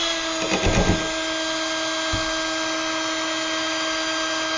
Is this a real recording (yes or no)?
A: yes